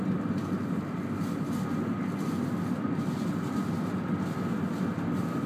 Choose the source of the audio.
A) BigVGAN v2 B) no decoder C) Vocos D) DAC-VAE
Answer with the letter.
B